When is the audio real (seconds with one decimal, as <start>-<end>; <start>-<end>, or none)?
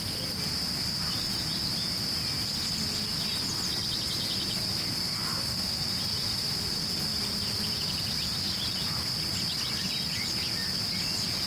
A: 0.0-11.5